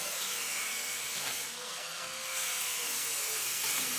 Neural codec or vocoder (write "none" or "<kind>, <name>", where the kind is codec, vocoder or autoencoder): codec, SNAC